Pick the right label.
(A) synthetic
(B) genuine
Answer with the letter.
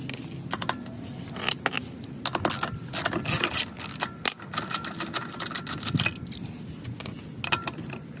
B